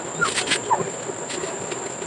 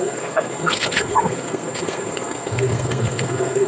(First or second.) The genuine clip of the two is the first